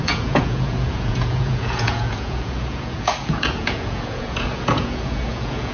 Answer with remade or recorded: remade